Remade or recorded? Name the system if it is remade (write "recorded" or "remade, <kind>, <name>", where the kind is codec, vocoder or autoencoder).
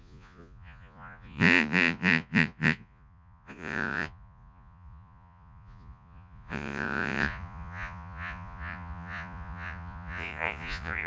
remade, vocoder, Vocos